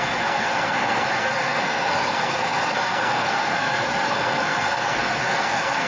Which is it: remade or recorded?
remade